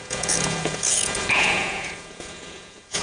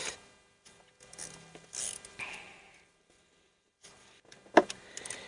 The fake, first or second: first